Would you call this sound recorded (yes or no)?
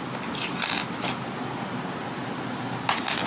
yes